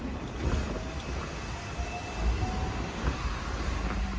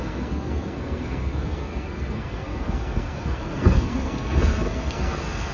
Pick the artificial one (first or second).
second